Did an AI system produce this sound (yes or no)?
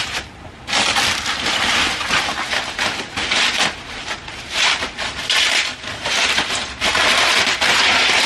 no